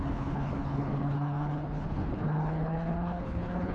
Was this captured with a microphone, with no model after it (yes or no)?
no